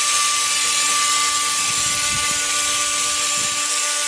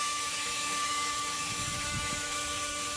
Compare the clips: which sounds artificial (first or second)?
second